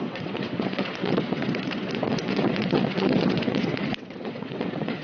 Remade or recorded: remade